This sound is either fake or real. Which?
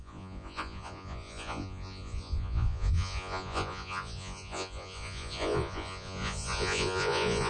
fake